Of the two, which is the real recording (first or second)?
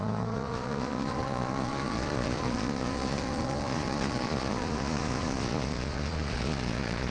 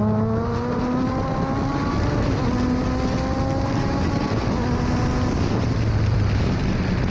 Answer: second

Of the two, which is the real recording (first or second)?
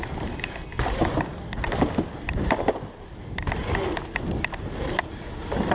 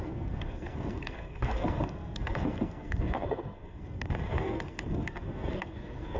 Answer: first